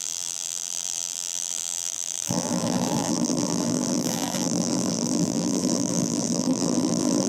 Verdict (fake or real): fake